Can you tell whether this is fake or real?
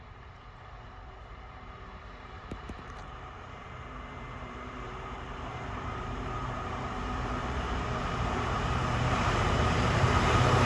fake